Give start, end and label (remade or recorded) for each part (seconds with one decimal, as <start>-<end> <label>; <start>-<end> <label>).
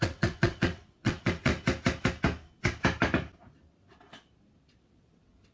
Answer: 0.0-1.5 remade; 1.5-4.8 recorded; 4.8-5.5 remade